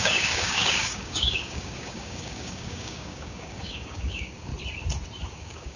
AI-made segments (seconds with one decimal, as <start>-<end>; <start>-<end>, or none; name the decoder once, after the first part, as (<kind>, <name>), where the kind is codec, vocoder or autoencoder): 0.0-4.5 (codec, DAC); 5.3-5.8